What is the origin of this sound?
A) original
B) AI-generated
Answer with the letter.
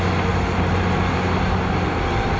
A